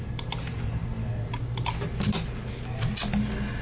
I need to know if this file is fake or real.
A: real